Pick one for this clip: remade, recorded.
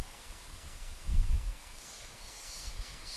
remade